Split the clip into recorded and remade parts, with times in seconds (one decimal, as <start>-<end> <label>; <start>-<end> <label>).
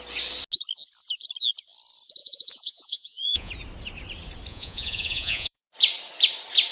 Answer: 0.0-2.2 recorded; 2.2-3.5 remade; 3.5-4.5 recorded; 4.5-5.6 remade; 5.6-6.7 recorded